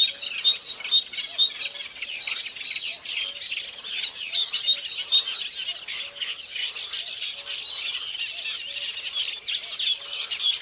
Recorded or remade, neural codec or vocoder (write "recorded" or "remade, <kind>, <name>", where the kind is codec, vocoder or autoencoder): recorded